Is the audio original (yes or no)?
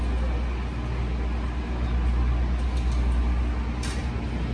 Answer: yes